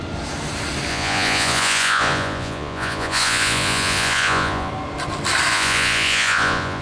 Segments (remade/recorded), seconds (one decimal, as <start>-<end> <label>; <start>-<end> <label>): 0.0-0.9 recorded; 0.9-4.7 remade; 4.7-5.5 recorded; 5.5-6.8 remade